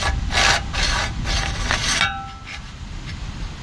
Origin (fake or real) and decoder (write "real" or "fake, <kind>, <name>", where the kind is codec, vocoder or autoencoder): real